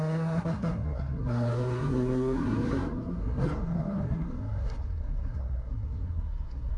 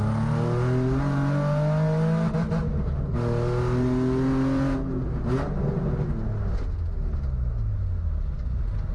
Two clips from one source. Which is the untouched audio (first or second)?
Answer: second